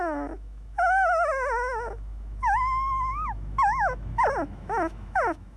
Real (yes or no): no